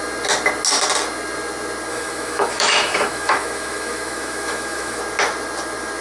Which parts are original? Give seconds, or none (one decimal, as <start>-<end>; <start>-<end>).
0.0-1.9; 5.0-6.0